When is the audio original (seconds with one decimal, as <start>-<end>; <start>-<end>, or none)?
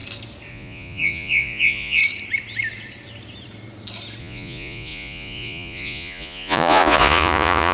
0.0-0.5; 2.0-4.2